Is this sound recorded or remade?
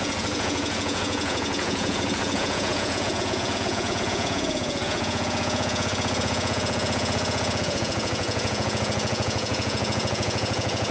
remade